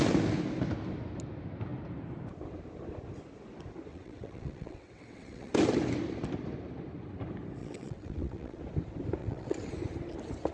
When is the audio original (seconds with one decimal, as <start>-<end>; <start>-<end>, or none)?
0.0-3.9; 5.5-7.6; 8.6-9.2; 9.7-10.5